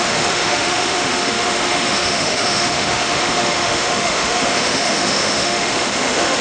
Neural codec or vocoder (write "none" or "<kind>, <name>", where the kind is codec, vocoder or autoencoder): autoencoder, DAC-VAE